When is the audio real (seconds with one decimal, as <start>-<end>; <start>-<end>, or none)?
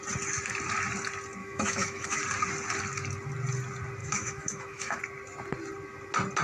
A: 0.0-1.4; 2.2-4.0; 5.0-6.4